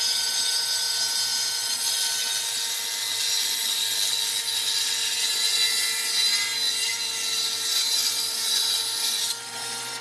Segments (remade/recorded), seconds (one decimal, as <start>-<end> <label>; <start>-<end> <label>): 0.0-10.0 recorded